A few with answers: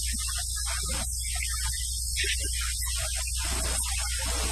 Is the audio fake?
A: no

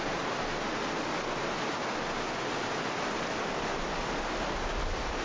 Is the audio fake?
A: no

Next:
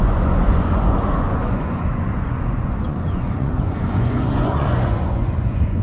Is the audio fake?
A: yes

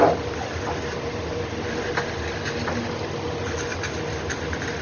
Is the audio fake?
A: no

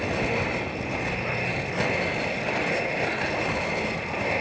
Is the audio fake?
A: no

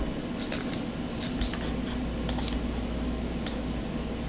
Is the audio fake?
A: no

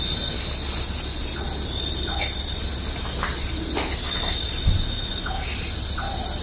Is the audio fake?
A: no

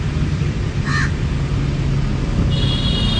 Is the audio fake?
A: no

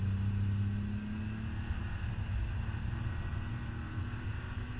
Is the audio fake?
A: no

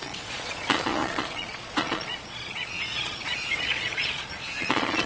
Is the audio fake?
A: yes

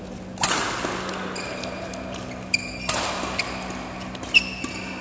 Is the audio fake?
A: no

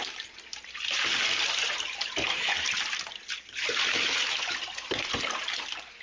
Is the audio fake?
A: no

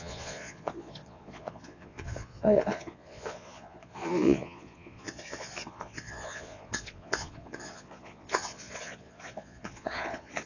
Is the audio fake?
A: yes